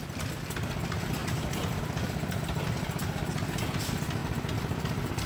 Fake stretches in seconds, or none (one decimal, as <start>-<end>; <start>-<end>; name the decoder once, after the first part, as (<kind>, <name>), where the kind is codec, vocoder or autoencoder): none